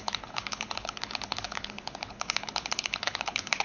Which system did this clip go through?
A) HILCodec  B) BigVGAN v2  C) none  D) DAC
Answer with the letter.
A